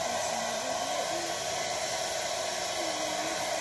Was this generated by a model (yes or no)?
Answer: no